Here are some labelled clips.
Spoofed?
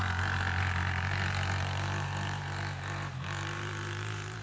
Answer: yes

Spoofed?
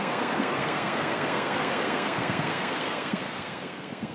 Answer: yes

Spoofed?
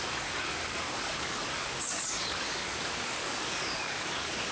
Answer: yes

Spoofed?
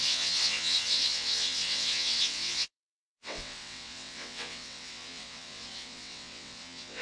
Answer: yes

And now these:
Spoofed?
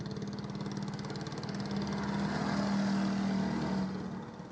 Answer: no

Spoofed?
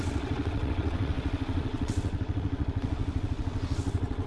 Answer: yes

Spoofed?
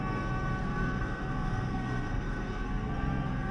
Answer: yes